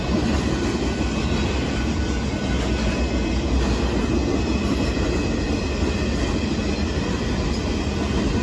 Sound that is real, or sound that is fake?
real